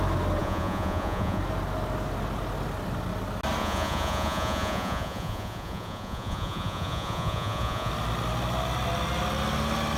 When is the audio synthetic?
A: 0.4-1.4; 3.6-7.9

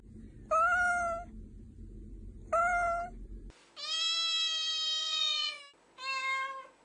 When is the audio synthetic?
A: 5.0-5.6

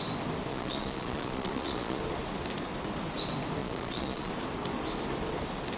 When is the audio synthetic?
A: 0.5-2.0; 3.6-4.3

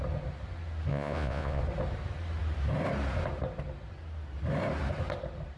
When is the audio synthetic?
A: 0.9-1.6